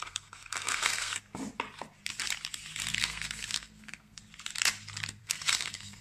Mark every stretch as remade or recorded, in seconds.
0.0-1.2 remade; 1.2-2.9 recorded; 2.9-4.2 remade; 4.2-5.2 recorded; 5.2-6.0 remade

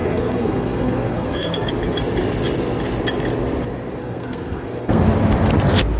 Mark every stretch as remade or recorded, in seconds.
0.0-1.7 remade; 1.7-4.0 recorded; 4.0-5.1 remade; 5.1-6.0 recorded

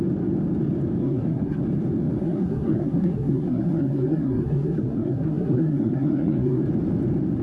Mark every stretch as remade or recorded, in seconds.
0.0-1.0 recorded; 1.0-1.6 remade; 1.6-2.2 recorded; 2.2-6.6 remade; 6.6-7.4 recorded

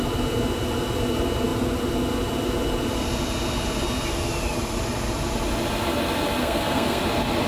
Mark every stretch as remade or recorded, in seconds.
0.0-6.4 recorded; 6.4-7.0 remade; 7.0-7.5 recorded

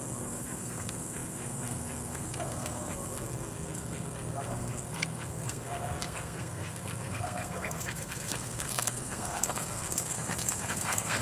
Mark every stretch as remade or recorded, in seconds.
0.0-11.2 remade

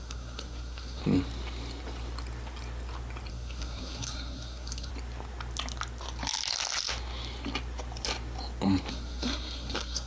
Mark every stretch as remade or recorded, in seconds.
0.0-1.0 remade; 1.0-3.3 recorded; 3.3-4.9 remade; 4.9-8.9 recorded; 8.9-10.1 remade